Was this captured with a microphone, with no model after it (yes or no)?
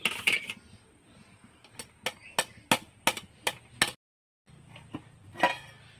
yes